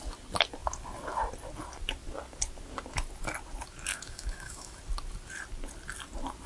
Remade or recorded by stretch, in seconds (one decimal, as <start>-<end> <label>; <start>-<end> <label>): 0.0-3.9 recorded; 3.9-4.8 remade; 4.8-6.5 recorded